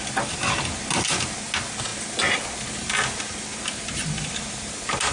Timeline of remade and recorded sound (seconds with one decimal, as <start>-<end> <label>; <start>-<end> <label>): 0.0-5.1 recorded